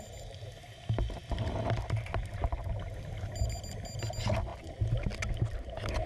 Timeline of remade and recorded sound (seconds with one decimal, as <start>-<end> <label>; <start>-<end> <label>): 0.0-6.1 recorded